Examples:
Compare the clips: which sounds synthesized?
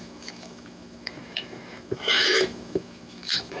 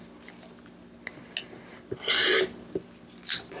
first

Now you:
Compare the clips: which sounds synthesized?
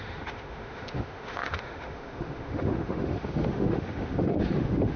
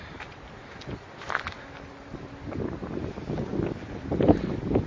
first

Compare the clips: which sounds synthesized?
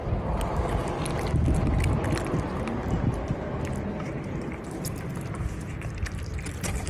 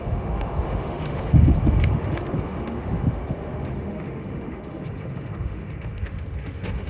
second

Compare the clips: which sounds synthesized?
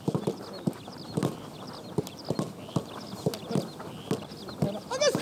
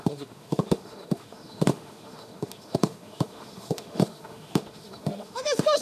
second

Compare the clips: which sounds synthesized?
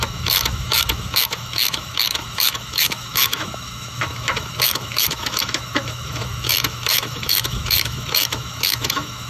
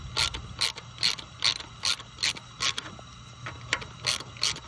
first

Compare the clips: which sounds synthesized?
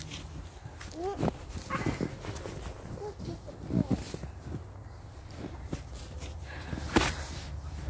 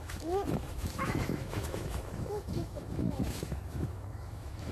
second